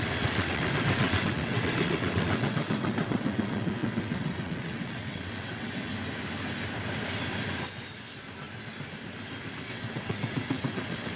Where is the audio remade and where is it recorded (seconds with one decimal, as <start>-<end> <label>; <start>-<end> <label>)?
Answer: 0.0-5.9 remade; 5.9-9.7 recorded; 9.7-11.2 remade